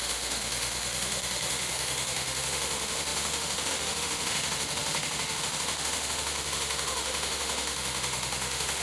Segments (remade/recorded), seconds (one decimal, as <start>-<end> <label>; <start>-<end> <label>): 0.0-8.8 remade